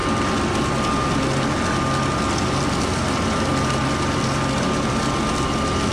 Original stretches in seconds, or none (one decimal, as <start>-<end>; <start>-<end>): 0.0-5.9